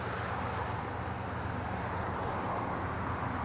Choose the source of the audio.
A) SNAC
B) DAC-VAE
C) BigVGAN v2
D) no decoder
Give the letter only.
D